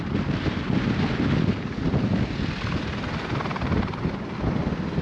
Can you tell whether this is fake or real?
real